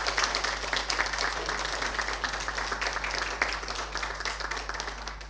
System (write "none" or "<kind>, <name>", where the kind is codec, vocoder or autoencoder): none